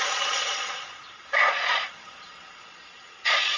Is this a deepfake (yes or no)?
yes